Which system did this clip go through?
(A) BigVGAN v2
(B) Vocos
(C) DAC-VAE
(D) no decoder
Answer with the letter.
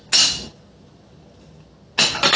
D